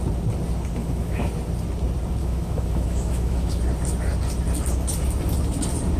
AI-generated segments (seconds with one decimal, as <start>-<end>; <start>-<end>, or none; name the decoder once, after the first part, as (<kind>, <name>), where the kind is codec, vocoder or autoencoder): 0.8-1.3 (autoencoder, DAC-VAE); 2.2-3.5